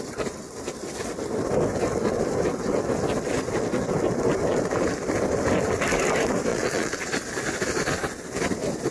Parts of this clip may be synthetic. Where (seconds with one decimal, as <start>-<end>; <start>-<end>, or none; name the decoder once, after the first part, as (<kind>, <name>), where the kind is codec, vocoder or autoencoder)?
6.5-7.1 (vocoder, Vocos)